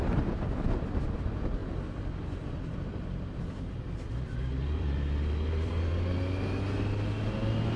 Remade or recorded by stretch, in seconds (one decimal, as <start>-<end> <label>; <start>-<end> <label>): 0.0-1.6 recorded; 1.6-5.9 remade; 5.9-7.8 recorded